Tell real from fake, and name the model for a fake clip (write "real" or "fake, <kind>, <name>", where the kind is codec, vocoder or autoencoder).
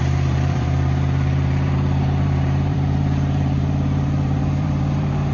fake, vocoder, BigVGAN v2